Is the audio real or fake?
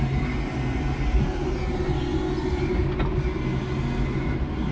real